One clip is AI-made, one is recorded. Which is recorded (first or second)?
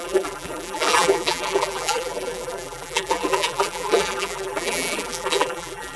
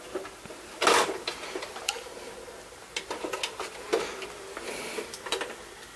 second